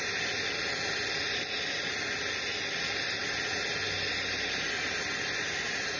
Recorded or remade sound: recorded